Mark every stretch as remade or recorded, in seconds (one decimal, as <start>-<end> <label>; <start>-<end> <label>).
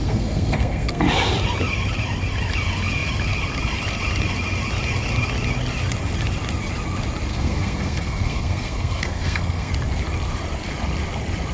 0.0-1.0 remade; 1.0-7.3 recorded; 7.3-9.7 remade; 9.7-11.5 recorded